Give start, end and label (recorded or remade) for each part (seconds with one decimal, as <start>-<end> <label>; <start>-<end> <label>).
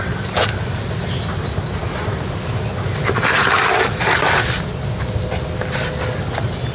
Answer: 0.0-6.7 recorded